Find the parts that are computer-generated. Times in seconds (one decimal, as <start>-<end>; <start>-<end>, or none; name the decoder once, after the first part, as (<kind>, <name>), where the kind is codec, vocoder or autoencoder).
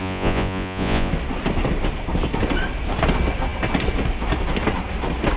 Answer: 0.0-1.1 (vocoder, Vocos)